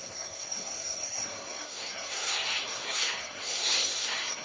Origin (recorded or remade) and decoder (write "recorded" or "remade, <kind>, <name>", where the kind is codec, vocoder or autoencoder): remade, codec, SNAC